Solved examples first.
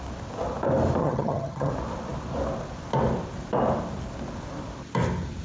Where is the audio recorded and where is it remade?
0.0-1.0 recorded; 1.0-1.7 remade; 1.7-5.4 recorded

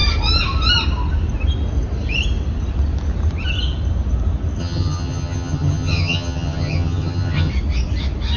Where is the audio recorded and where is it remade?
0.0-4.6 recorded; 4.6-7.5 remade; 7.5-8.4 recorded

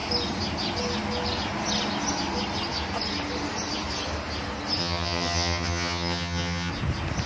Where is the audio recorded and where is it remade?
0.0-4.8 recorded; 4.8-6.7 remade; 6.7-7.3 recorded

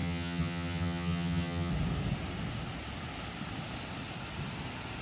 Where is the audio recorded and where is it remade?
0.0-1.7 remade; 1.7-5.0 recorded